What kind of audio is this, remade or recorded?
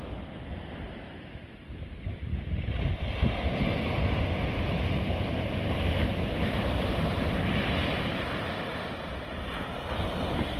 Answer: recorded